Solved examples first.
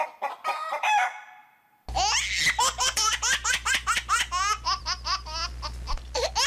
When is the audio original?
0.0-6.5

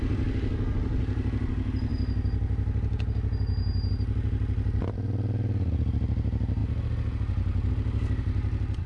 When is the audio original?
0.0-8.9